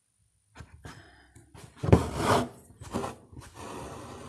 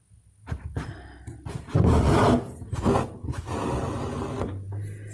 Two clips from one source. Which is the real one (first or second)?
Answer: second